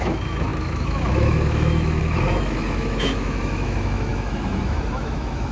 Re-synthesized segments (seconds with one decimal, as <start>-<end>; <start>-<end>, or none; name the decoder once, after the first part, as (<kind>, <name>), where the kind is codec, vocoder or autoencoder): 0.0-5.5 (autoencoder, DAC-VAE)